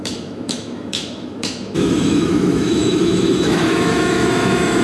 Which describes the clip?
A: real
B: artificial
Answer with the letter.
B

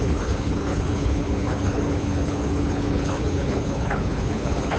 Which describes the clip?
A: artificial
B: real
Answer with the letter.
A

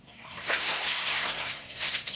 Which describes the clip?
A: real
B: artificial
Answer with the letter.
B